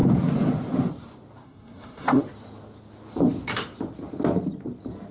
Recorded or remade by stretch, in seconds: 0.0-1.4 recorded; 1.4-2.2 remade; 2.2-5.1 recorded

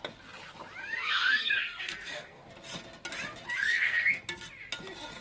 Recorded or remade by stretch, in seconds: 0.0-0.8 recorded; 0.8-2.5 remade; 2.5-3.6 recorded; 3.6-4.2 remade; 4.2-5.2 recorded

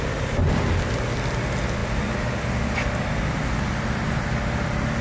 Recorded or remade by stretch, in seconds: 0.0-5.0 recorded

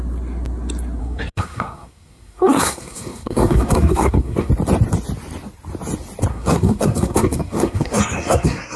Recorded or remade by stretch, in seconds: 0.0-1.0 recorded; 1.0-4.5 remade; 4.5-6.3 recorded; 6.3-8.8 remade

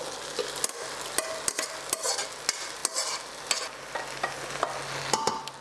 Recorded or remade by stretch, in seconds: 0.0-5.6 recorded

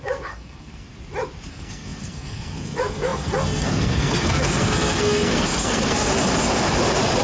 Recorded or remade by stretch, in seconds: 0.0-0.9 remade; 0.9-1.5 recorded; 1.5-6.1 remade; 6.1-7.2 recorded